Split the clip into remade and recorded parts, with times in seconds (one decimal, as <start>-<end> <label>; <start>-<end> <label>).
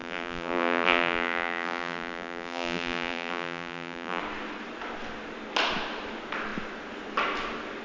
0.0-4.2 remade; 4.2-7.8 recorded